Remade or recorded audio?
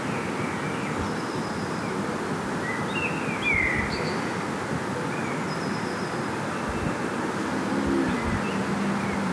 recorded